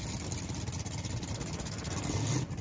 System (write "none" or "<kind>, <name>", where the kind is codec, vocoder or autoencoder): none